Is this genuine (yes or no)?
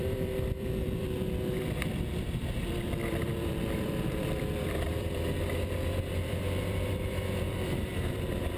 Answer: no